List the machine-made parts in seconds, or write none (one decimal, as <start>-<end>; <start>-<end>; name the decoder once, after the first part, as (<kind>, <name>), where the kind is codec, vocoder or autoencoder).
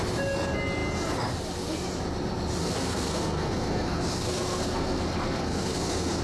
2.6-6.2 (codec, SNAC)